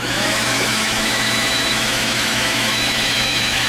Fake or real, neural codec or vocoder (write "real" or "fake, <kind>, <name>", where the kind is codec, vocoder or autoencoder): fake, autoencoder, DAC-VAE